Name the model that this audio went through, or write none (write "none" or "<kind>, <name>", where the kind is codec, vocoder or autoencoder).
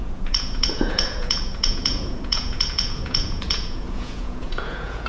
vocoder, Vocos